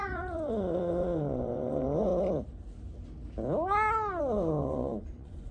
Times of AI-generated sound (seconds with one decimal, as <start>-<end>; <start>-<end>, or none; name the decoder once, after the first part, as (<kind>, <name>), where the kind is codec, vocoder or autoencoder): 0.0-2.1 (vocoder, Vocos); 4.2-5.5